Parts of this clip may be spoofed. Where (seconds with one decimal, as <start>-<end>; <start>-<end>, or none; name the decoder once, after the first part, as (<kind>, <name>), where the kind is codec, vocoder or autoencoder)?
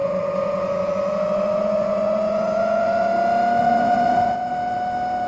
0.0-3.1 (vocoder, Vocos); 3.6-4.5